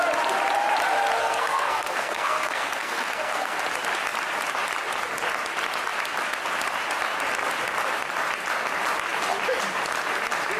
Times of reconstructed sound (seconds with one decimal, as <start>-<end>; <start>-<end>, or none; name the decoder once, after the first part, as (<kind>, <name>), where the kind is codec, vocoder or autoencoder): 1.2-3.6 (codec, SNAC)